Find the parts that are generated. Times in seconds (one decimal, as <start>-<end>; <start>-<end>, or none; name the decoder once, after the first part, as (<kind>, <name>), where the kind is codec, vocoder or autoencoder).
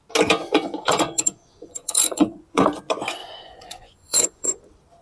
0.4-2.8 (vocoder, Vocos); 3.2-4.6